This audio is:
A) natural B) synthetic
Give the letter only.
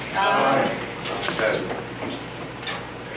A